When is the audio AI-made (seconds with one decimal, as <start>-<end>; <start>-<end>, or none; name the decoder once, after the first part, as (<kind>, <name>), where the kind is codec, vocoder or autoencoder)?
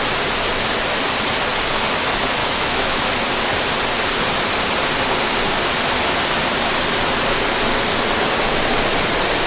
2.4-3.0 (autoencoder, DAC-VAE)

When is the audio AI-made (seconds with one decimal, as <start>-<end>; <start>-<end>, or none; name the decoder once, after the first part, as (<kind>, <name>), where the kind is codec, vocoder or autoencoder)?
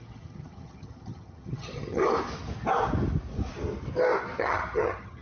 0.0-2.0 (vocoder, HiFi-GAN); 4.4-5.2